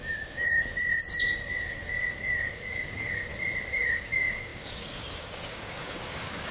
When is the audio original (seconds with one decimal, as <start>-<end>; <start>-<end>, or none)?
0.7-1.3; 3.3-3.8